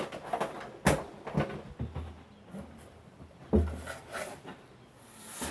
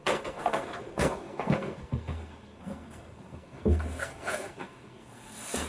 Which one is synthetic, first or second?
second